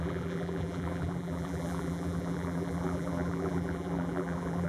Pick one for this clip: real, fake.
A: fake